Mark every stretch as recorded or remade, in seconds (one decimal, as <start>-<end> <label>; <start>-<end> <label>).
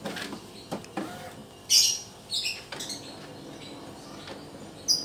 0.0-5.0 recorded